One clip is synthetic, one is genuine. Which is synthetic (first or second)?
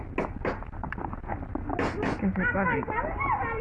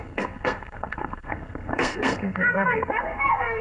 second